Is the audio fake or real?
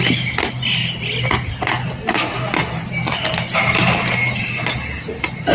real